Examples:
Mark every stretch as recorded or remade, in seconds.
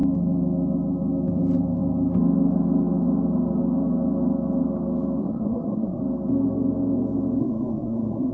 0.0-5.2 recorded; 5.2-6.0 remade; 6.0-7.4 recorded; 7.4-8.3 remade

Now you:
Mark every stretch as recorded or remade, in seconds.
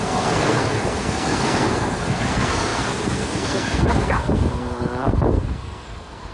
0.0-6.3 remade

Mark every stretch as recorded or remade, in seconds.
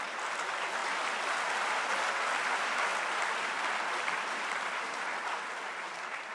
0.0-6.3 recorded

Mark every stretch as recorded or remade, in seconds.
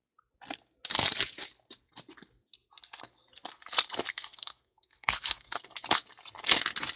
0.0-4.1 recorded; 4.1-5.7 remade; 5.7-7.0 recorded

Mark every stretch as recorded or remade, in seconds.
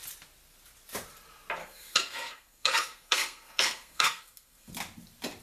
0.0-1.6 recorded; 1.6-4.7 remade; 4.7-5.4 recorded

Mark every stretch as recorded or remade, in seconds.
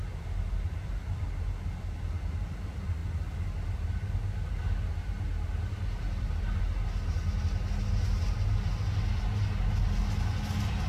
0.0-10.9 recorded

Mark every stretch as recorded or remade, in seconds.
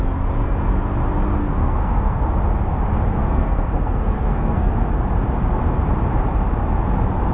0.0-1.4 recorded; 1.4-2.2 remade; 2.2-3.2 recorded; 3.2-4.7 remade; 4.7-7.3 recorded